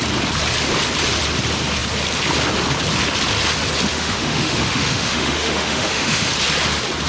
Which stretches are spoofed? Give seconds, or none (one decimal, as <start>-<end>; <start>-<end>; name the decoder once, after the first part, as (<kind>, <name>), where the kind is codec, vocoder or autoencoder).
3.9-6.3 (autoencoder, DAC-VAE)